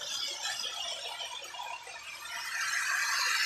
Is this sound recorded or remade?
recorded